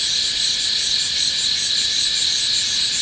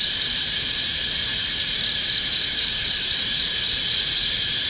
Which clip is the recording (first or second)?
first